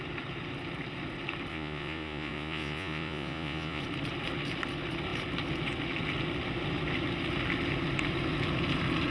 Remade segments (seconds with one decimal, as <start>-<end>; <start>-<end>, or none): 1.5-3.8